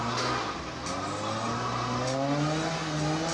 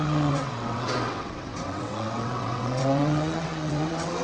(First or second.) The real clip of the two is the first